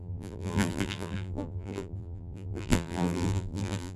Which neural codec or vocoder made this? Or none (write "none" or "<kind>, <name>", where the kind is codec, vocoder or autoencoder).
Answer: vocoder, BigVGAN v2